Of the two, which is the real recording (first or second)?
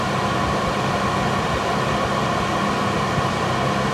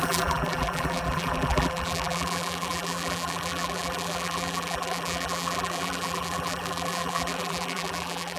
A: first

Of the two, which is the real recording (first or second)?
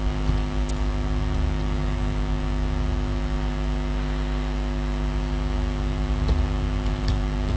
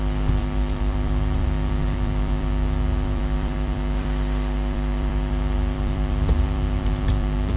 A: first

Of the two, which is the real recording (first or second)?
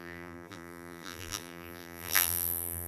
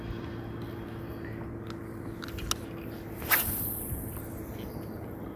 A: second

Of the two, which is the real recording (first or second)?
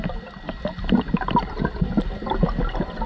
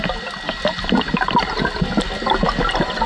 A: second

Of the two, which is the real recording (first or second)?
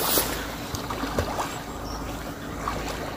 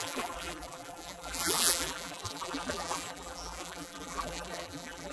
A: first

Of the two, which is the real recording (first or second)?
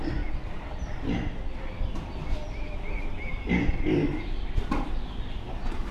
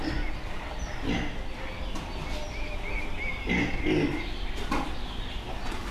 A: second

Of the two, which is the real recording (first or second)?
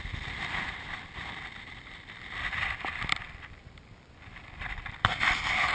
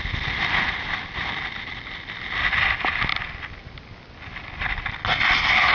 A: second